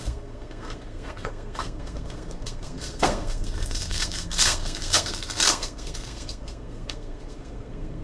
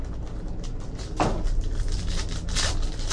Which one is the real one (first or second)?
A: second